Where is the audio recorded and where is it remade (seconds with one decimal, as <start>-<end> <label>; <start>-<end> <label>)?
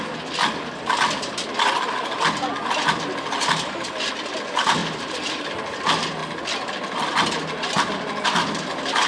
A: 0.0-4.8 recorded; 4.8-5.5 remade; 5.5-9.1 recorded